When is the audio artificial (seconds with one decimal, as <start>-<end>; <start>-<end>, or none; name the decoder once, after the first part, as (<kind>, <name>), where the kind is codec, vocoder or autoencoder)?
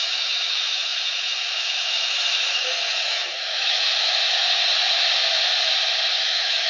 0.0-4.2 (autoencoder, DAC-VAE); 6.2-6.7